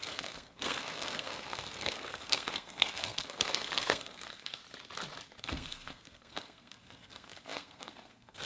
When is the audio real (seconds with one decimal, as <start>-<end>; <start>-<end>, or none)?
4.6-5.4